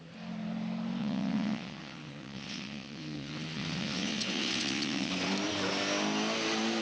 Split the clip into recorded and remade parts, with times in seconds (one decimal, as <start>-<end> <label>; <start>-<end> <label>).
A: 0.0-1.0 recorded; 1.0-5.1 remade; 5.1-6.8 recorded

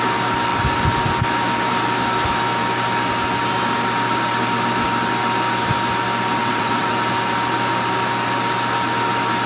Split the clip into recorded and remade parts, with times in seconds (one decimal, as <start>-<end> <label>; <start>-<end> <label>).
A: 0.0-6.4 recorded; 6.4-6.9 remade; 6.9-9.5 recorded

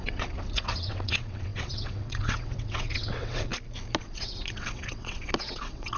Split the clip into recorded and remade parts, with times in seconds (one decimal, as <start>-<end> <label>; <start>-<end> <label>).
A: 0.0-3.5 remade; 3.5-4.0 recorded; 4.0-6.0 remade

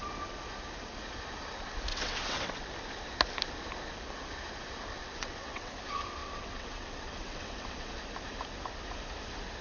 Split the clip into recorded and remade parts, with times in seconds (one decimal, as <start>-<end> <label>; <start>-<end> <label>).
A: 0.0-1.9 recorded; 1.9-2.7 remade; 2.7-4.9 recorded; 4.9-5.7 remade; 5.7-6.2 recorded; 6.2-7.9 remade; 7.9-9.6 recorded

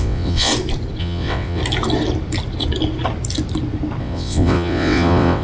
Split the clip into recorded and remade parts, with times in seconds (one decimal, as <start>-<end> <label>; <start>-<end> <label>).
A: 0.0-0.5 remade; 0.5-1.0 recorded; 1.0-1.6 remade; 1.6-4.0 recorded; 4.0-5.4 remade

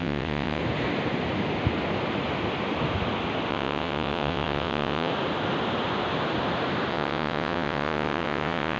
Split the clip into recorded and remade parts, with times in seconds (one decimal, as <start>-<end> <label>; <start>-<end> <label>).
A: 0.0-0.6 remade; 0.6-3.5 recorded; 3.5-5.1 remade; 5.1-6.9 recorded; 6.9-8.8 remade

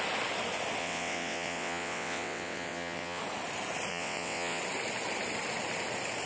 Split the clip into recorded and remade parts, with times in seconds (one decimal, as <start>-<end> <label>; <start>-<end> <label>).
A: 0.0-0.8 recorded; 0.8-3.2 remade; 3.2-3.9 recorded; 3.9-4.6 remade; 4.6-6.3 recorded

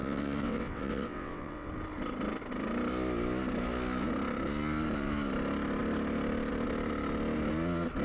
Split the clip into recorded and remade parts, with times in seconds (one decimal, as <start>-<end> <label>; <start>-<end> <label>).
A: 0.0-1.7 remade; 1.7-8.0 recorded